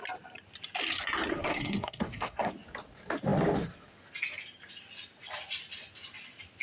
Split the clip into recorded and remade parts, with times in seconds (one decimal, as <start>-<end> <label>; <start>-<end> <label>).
0.0-1.3 recorded; 1.3-2.5 remade; 2.5-6.6 recorded